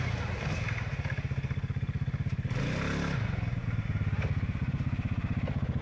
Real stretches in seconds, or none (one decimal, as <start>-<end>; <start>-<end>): 0.0-5.8